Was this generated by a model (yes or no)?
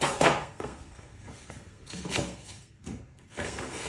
yes